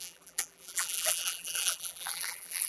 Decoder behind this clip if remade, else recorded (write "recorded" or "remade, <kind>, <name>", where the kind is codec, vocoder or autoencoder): remade, vocoder, BigVGAN v2